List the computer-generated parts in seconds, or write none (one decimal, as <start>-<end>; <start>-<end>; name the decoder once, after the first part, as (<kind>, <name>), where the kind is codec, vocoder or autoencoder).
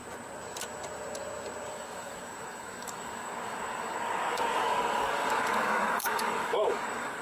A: 1.7-7.2 (codec, DAC)